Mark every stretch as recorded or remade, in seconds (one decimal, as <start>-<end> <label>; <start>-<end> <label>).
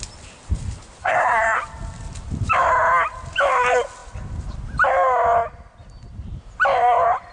0.0-1.0 recorded; 1.0-1.6 remade; 1.6-7.3 recorded